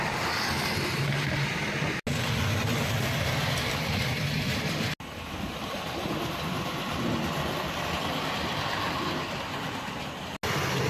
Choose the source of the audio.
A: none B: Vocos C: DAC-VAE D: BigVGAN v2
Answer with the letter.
A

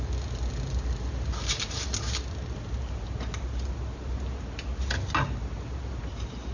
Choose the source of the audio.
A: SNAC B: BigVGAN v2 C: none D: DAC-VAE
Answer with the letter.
C